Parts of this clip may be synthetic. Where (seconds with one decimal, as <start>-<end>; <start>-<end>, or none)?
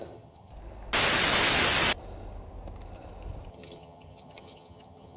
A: 0.0-0.5; 3.5-5.2